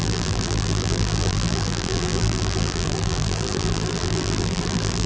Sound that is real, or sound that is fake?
fake